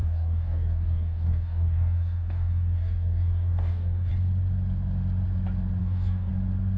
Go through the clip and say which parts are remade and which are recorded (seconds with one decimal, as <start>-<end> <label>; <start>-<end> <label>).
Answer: 0.0-4.1 remade; 4.1-5.8 recorded; 5.8-6.3 remade; 6.3-6.8 recorded